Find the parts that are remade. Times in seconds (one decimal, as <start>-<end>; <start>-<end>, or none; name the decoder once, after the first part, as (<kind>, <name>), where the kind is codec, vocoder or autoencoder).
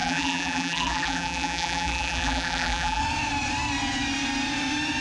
0.0-3.0 (vocoder, BigVGAN v2)